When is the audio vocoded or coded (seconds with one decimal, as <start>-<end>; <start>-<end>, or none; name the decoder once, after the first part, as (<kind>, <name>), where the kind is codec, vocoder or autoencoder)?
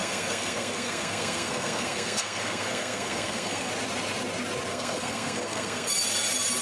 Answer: 0.0-3.7 (codec, SNAC); 4.7-5.9